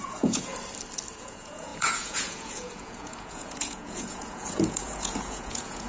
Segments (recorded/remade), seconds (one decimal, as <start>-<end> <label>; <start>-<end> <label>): 0.0-0.5 remade; 0.5-1.2 recorded; 1.2-5.9 remade